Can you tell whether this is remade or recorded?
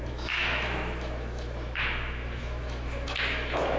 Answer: remade